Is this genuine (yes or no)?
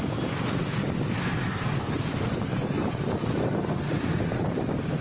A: yes